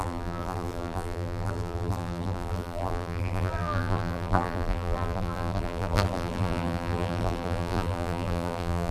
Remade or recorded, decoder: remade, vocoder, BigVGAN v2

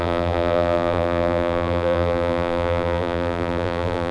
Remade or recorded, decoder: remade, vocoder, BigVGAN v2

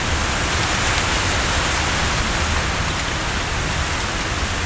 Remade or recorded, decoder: recorded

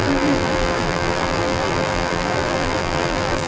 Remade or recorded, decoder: remade, vocoder, BigVGAN v2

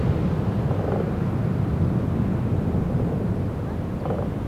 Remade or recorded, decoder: recorded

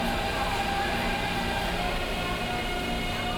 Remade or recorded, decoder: recorded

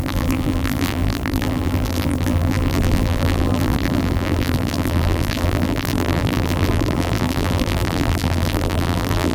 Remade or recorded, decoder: remade, vocoder, BigVGAN v2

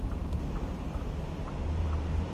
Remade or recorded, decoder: remade, vocoder, BigVGAN v2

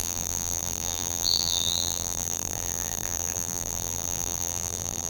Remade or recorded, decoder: remade, vocoder, BigVGAN v2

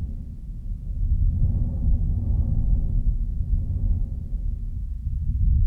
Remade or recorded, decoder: recorded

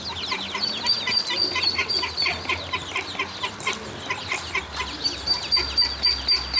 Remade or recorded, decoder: recorded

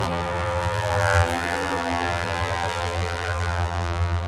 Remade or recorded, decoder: remade, vocoder, BigVGAN v2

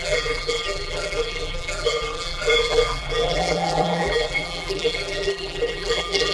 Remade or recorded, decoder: remade, vocoder, BigVGAN v2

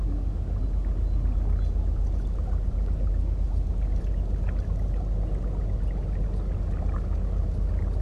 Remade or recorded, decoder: recorded